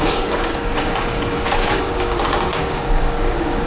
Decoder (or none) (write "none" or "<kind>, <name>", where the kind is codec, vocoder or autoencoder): codec, DAC